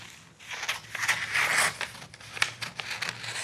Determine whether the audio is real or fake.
real